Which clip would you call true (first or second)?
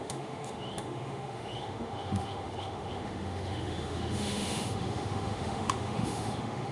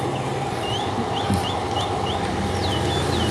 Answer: second